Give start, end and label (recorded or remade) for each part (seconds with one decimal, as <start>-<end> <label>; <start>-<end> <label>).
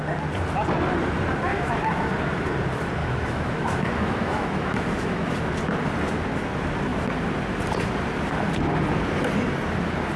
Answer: 0.0-1.5 recorded; 1.5-2.1 remade; 2.1-3.0 recorded; 3.0-5.4 remade; 5.4-10.2 recorded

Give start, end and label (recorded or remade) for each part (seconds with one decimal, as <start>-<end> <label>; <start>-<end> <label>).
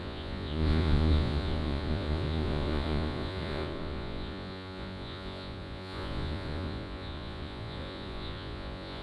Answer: 0.0-9.0 remade